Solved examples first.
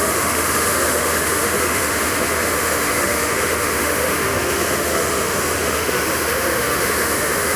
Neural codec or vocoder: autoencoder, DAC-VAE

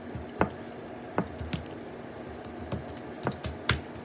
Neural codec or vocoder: none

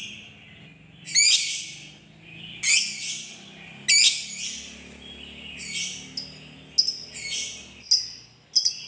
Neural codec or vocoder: none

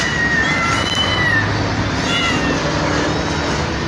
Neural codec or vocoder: none